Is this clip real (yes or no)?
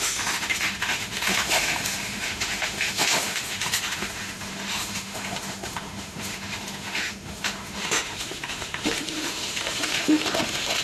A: no